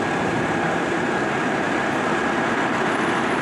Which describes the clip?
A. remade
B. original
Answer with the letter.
A